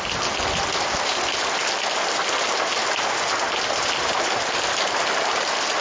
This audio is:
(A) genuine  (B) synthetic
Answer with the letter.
A